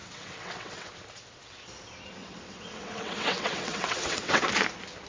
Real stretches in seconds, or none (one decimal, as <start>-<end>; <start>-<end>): 0.9-2.2; 4.5-5.1